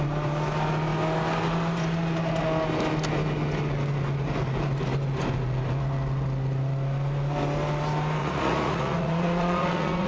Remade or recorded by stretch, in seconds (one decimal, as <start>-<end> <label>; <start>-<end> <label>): 0.0-8.2 recorded; 8.2-10.1 remade